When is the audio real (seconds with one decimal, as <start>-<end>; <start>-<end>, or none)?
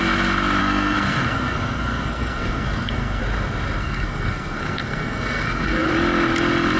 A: 0.0-0.6; 3.2-3.8; 5.9-6.8